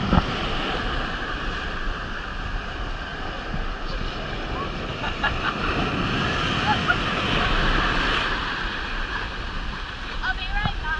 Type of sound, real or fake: real